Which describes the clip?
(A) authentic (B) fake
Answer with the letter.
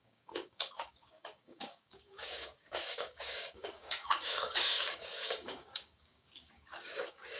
B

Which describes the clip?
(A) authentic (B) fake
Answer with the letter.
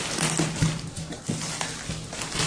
A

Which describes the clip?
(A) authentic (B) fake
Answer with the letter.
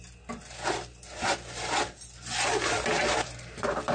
A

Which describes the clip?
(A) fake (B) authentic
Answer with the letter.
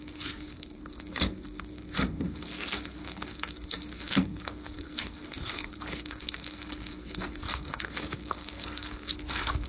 A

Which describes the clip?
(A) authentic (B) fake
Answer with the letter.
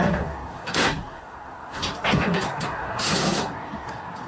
B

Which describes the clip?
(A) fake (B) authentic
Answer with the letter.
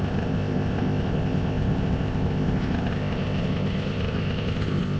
A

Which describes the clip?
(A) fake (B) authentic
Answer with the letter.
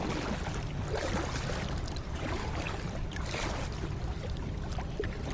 B